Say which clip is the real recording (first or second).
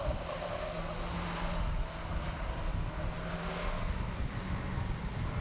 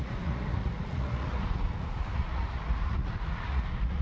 first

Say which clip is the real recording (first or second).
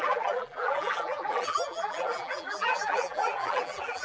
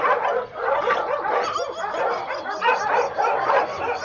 second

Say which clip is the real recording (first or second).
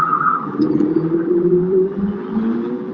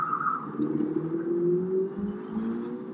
second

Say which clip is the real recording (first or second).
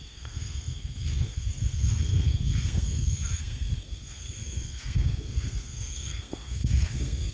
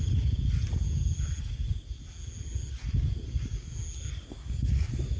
second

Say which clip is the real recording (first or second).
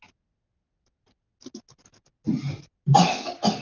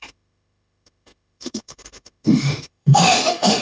first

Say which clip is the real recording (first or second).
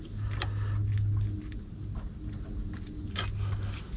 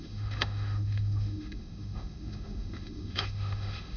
first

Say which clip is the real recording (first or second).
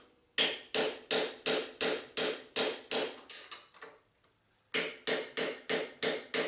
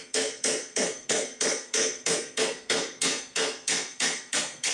first